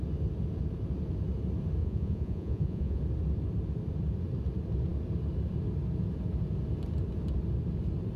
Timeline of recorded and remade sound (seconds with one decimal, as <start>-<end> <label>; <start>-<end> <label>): 0.0-1.8 recorded; 1.8-3.0 remade; 3.0-8.2 recorded